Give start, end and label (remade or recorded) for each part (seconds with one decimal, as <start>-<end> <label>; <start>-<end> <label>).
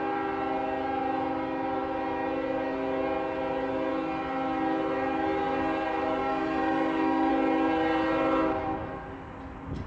0.0-6.2 recorded; 6.2-7.3 remade; 7.3-9.9 recorded